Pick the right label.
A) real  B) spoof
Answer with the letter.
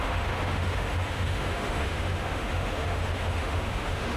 B